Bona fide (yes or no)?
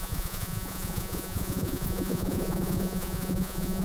no